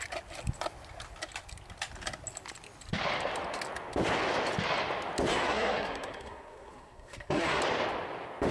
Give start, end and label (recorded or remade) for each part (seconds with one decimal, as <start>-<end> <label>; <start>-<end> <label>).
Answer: 0.0-5.3 recorded; 5.3-7.6 remade; 7.6-8.5 recorded